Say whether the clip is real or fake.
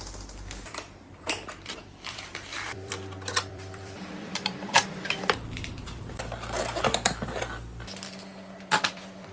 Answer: fake